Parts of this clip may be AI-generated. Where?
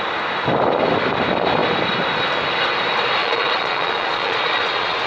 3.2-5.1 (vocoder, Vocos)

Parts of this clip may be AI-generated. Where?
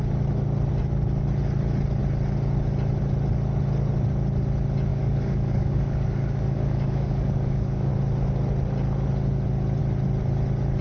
4.9-7.9 (codec, DAC)